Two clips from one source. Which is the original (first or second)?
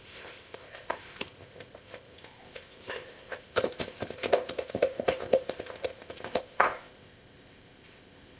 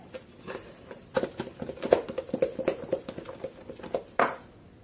second